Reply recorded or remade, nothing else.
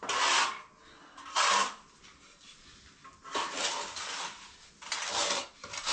recorded